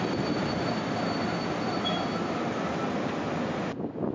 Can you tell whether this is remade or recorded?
recorded